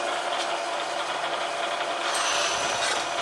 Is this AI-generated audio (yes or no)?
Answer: no